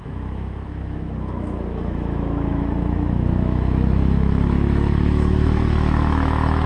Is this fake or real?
fake